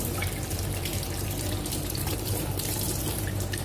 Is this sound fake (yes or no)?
yes